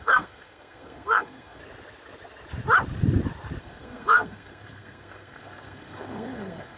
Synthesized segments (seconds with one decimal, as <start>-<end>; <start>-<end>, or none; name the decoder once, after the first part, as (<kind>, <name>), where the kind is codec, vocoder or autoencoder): 0.0-1.6 (codec, SNAC); 3.6-6.8